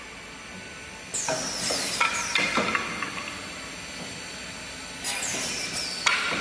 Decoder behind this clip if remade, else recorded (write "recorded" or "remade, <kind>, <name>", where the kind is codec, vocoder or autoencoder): recorded